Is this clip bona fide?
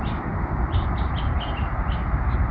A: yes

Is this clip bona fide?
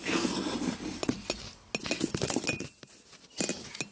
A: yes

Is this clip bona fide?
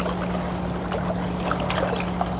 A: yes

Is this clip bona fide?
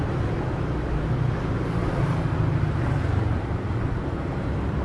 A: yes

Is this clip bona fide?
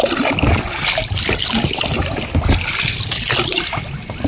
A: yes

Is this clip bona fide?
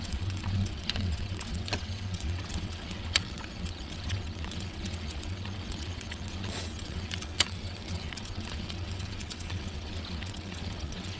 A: no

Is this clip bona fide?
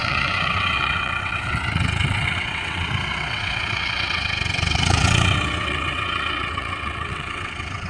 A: no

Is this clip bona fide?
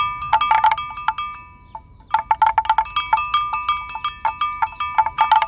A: yes